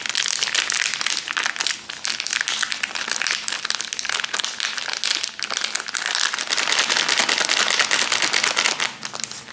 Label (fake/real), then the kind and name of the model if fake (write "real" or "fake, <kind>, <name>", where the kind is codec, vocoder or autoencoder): real